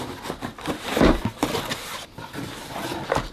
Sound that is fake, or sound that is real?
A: real